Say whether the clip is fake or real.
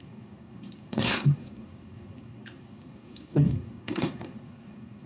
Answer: fake